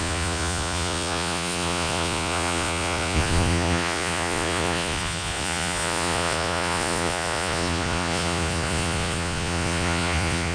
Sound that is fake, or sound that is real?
fake